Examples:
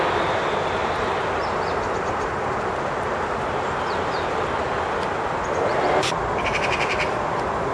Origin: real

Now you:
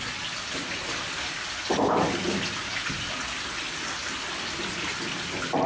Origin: real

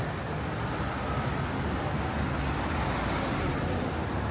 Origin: real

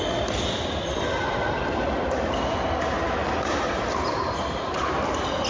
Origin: real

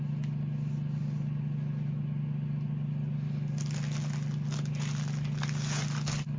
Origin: real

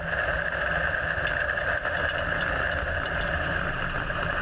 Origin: real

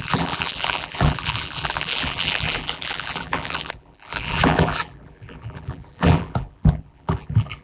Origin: fake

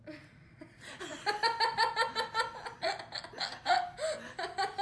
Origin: real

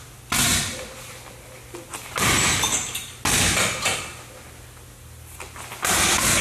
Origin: real